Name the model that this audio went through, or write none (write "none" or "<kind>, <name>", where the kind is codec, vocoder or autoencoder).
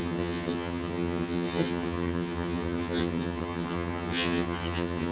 vocoder, HiFi-GAN